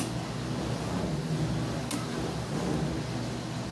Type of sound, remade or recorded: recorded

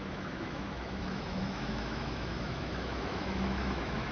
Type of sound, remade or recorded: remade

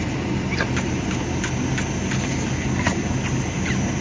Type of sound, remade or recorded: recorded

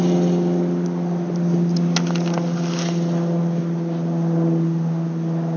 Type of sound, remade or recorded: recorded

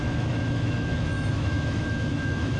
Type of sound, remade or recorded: remade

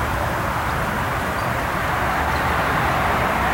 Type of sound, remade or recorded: recorded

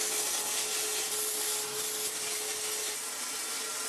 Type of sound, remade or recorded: recorded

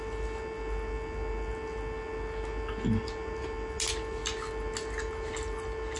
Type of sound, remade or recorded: recorded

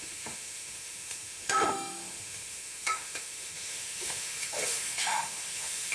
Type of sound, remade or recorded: remade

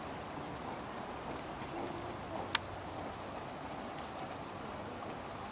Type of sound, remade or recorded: recorded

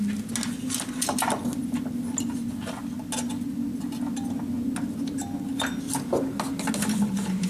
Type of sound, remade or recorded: recorded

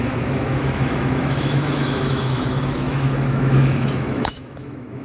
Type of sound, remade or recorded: remade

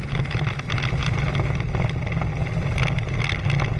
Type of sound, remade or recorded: recorded